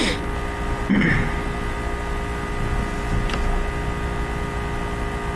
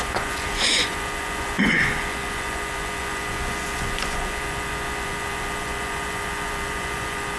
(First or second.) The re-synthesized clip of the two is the second